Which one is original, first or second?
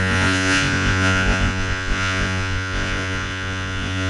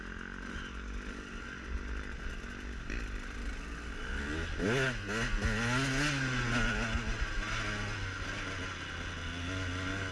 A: second